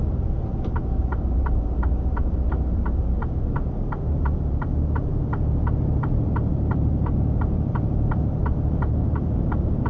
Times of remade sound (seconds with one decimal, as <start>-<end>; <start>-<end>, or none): 0.0-1.8; 4.1-5.1; 6.2-8.4; 8.9-9.9